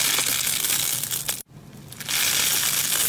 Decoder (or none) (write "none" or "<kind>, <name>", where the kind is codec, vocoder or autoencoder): none